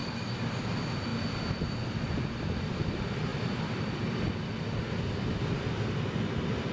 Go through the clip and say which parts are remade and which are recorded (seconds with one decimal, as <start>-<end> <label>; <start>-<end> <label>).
0.0-6.7 recorded